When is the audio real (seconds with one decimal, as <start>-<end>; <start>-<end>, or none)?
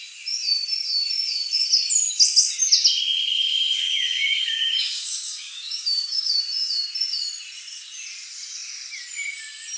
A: 0.0-3.3; 6.3-9.8